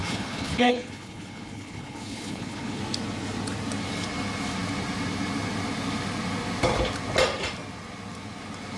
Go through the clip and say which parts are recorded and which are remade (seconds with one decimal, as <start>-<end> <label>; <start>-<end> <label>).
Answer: 0.0-2.8 remade; 2.8-8.8 recorded